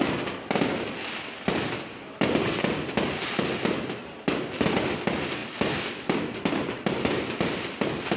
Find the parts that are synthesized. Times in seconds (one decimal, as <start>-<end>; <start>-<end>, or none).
none